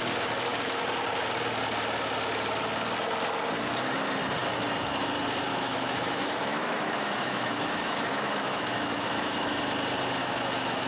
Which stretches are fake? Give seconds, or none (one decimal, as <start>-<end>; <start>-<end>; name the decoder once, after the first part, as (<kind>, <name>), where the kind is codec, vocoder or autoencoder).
5.5-9.6 (autoencoder, DAC-VAE); 10.2-10.9

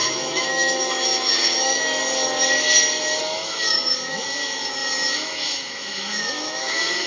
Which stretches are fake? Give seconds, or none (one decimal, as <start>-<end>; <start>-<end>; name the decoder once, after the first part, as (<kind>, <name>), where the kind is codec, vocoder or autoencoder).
0.0-2.0 (autoencoder, DAC-VAE); 3.2-7.1

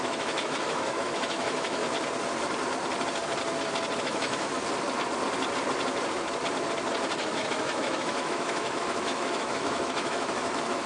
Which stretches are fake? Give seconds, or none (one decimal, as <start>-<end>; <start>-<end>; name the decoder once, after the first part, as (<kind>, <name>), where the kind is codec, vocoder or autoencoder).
0.0-1.8 (autoencoder, DAC-VAE); 4.0-4.5; 7.2-10.9

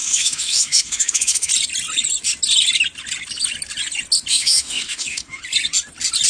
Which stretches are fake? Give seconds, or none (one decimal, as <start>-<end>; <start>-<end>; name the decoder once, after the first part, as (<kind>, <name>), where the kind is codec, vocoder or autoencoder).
0.0-1.5 (autoencoder, DAC-VAE); 4.3-5.4

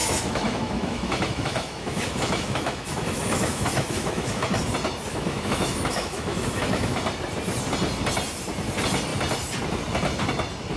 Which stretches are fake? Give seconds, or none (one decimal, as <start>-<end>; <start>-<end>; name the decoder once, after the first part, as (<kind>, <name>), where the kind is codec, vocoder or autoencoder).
0.0-4.6 (autoencoder, DAC-VAE); 5.1-7.0

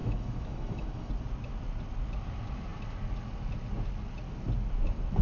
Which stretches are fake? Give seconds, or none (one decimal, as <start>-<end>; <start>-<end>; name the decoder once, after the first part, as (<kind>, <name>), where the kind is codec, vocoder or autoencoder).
0.0-1.1 (autoencoder, DAC-VAE)

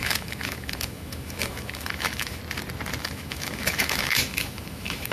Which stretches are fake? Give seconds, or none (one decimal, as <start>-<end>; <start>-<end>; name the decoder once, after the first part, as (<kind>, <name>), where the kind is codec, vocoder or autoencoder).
0.0-2.4 (autoencoder, DAC-VAE); 3.0-5.1

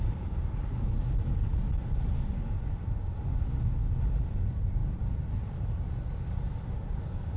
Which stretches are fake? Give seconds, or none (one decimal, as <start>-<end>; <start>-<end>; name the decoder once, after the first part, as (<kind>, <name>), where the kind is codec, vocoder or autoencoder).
none